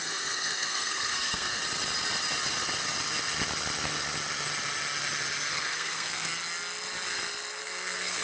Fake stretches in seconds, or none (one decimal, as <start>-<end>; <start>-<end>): 0.0-1.6; 5.5-6.3; 7.6-8.2